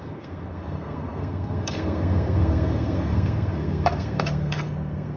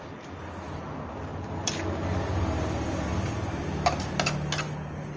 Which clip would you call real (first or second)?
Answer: second